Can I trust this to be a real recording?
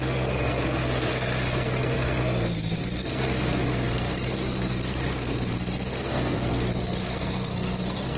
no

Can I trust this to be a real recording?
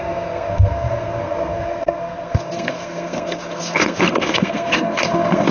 no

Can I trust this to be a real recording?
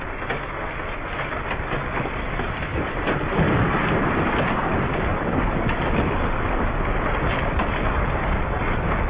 yes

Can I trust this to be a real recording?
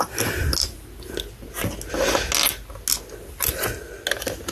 yes